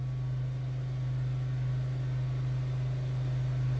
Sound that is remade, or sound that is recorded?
recorded